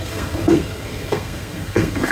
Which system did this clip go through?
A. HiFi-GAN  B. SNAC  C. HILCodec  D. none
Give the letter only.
B